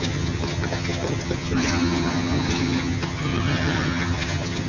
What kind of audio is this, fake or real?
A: fake